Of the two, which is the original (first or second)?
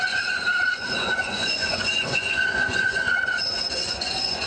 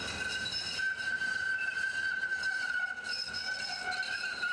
second